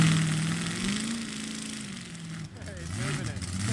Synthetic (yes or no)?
no